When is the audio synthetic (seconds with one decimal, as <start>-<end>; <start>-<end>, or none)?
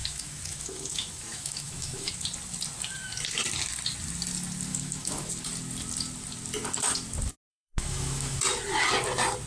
0.0-2.1; 4.7-5.3; 7.5-8.4